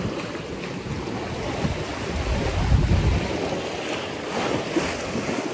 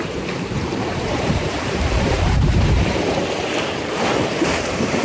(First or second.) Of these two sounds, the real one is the first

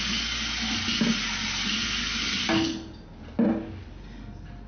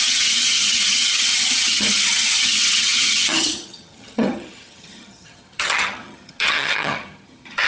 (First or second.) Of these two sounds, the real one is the first